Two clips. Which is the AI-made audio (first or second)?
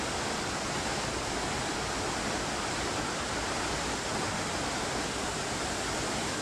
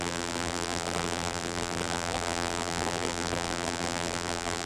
second